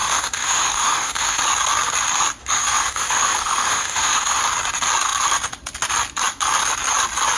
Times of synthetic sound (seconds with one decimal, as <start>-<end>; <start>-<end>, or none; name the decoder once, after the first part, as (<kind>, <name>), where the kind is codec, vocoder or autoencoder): 0.0-1.4 (autoencoder, DAC-VAE); 2.4-4.4